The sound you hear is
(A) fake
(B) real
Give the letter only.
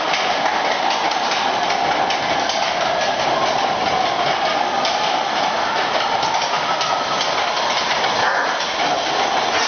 B